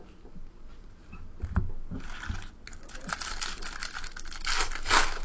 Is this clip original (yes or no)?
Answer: yes